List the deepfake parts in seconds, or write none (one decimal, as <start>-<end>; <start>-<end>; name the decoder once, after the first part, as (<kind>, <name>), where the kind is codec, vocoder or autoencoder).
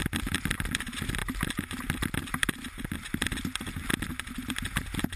none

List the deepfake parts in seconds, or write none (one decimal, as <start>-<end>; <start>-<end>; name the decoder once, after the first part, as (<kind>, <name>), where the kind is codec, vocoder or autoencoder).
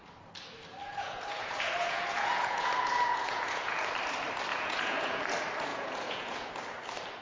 0.8-3.9 (vocoder, Vocos); 4.5-5.2; 5.7-6.5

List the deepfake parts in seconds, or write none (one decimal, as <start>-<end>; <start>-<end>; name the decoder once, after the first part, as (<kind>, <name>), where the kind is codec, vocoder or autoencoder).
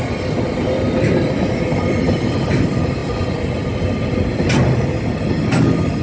none